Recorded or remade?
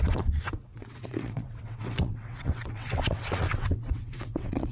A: remade